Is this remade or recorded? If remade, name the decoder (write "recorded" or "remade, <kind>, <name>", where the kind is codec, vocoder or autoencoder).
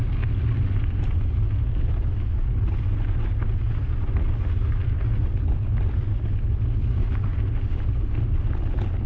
recorded